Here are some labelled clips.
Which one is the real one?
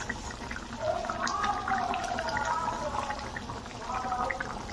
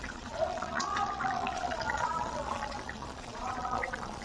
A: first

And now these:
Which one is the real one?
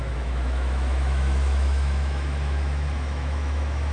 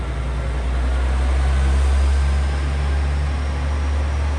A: second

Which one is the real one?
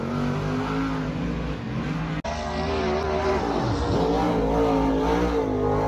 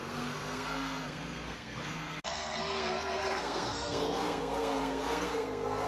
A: first